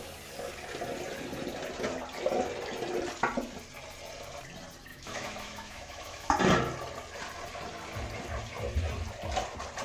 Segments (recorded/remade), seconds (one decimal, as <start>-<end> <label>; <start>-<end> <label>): 0.0-4.9 recorded; 4.9-6.4 remade; 6.4-9.8 recorded